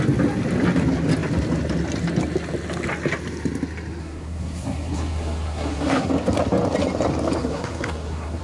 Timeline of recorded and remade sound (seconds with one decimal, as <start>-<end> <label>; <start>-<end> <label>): 0.0-4.0 recorded; 4.0-6.1 remade; 6.1-7.4 recorded; 7.4-8.4 remade